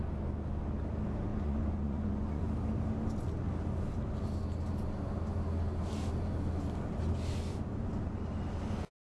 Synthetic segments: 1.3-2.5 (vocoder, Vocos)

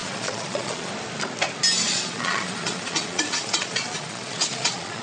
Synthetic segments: 0.0-0.9 (vocoder, Vocos); 1.9-5.0